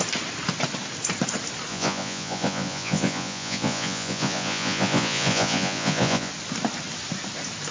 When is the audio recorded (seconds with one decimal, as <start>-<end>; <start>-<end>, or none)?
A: 0.0-1.7; 6.3-7.7